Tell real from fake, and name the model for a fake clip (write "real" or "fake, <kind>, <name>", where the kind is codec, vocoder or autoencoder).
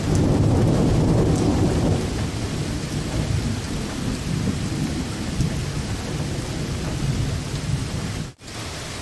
real